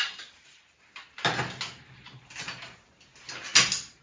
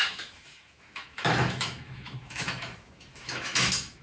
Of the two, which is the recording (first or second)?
first